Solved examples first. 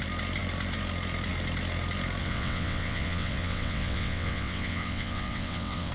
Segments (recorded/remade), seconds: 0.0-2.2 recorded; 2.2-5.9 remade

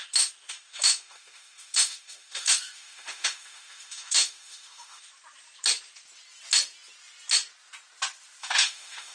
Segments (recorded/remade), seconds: 0.0-5.1 remade; 5.1-8.4 recorded; 8.4-9.1 remade

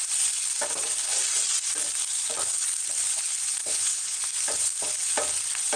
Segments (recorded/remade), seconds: 0.0-3.6 recorded; 3.6-4.2 remade; 4.2-5.8 recorded

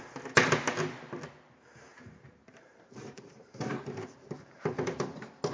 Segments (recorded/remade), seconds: 0.0-1.9 recorded; 1.9-5.1 remade; 5.1-5.5 recorded